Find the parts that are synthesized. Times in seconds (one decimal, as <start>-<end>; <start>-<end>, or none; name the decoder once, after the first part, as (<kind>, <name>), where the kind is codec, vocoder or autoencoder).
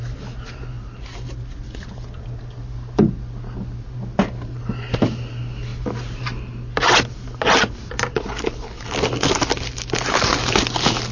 none